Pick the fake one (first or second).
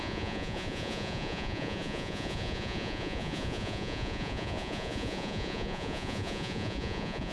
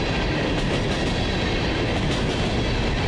first